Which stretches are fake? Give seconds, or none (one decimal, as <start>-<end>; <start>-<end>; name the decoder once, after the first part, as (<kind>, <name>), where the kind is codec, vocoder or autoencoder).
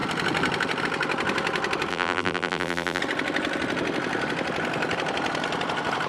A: 1.9-3.0 (vocoder, BigVGAN v2)